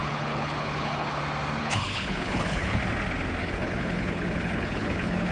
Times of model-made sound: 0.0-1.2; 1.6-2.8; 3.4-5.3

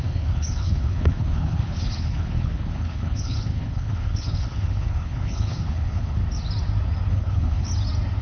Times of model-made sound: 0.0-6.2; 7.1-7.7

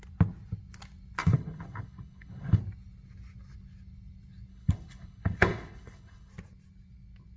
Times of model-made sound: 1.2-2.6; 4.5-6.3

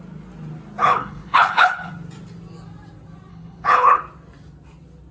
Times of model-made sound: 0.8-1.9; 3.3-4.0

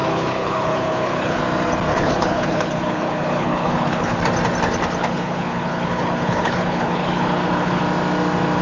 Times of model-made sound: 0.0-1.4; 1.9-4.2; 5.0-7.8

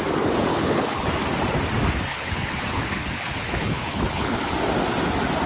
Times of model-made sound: 0.5-1.1; 2.1-4.5

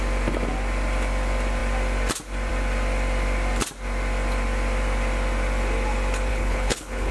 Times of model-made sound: 6.3-7.1